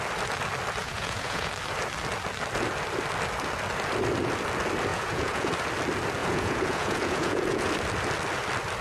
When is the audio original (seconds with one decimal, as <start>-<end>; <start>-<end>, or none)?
0.0-0.8; 1.5-4.9; 5.5-6.2; 7.7-8.8